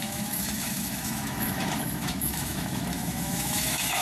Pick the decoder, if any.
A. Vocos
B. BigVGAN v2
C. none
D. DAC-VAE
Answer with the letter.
D